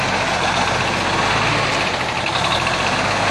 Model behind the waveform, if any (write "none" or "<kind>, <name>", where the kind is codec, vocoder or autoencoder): none